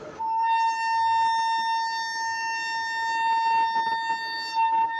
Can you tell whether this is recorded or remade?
recorded